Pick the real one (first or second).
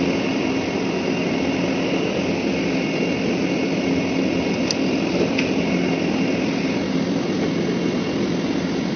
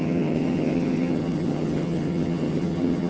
first